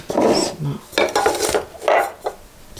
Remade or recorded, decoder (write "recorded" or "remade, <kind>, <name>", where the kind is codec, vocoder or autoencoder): recorded